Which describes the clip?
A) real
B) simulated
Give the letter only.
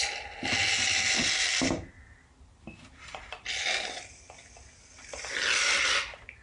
A